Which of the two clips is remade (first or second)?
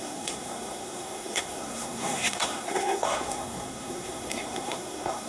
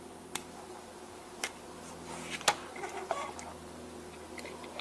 first